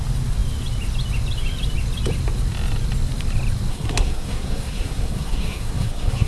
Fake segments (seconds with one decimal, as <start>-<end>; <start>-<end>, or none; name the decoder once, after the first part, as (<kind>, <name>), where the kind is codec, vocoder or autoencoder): 3.7-6.3 (codec, SNAC)